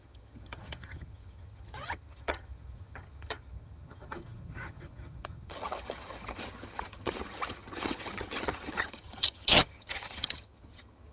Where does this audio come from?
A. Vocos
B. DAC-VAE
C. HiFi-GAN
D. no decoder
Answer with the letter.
C